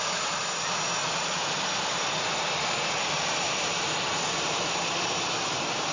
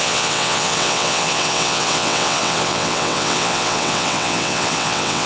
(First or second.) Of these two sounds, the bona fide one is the first